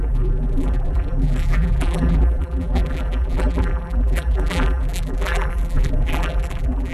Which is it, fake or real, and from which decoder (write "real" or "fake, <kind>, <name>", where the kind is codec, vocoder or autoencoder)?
fake, vocoder, BigVGAN v2